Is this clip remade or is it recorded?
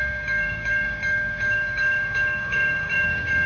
remade